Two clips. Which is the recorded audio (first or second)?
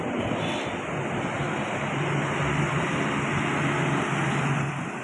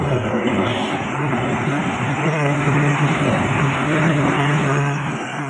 first